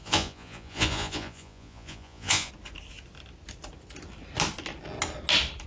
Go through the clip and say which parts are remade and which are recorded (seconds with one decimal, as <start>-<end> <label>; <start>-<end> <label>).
0.0-2.5 remade; 2.5-5.7 recorded

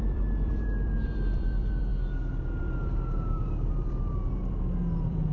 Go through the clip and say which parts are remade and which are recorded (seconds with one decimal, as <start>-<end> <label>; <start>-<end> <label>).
0.0-1.9 remade; 1.9-2.6 recorded; 2.6-5.3 remade

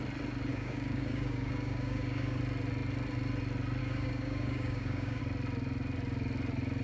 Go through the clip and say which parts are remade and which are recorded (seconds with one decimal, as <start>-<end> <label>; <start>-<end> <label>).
0.0-0.5 recorded; 0.5-2.4 remade; 2.4-3.8 recorded; 3.8-5.2 remade; 5.2-6.8 recorded